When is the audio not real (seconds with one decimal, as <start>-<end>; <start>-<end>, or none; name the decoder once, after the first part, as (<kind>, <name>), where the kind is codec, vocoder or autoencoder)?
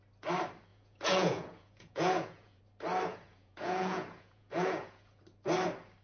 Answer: 0.7-2.6 (vocoder, Vocos); 3.1-5.2